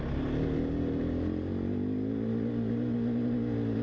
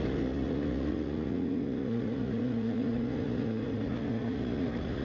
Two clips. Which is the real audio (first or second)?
first